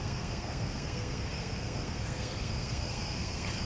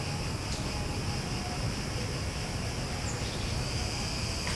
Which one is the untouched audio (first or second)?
second